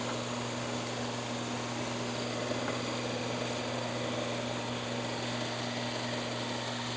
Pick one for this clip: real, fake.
real